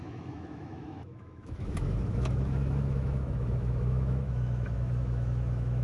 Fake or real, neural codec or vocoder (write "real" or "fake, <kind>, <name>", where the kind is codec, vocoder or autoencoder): fake, autoencoder, DAC-VAE